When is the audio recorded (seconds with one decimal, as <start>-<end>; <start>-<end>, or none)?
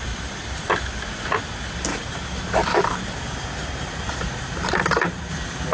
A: 0.0-1.9; 5.3-5.7